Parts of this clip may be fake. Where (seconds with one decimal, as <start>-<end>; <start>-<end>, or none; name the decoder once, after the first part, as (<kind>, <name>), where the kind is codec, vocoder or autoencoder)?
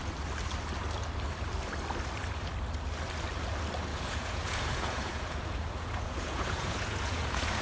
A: 3.9-7.6 (vocoder, Vocos)